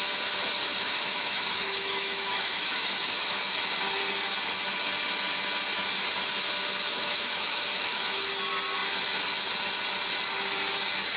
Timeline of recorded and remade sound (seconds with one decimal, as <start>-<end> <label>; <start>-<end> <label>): 0.0-0.6 recorded; 0.6-3.4 remade; 3.4-6.9 recorded; 6.9-8.3 remade; 8.3-11.2 recorded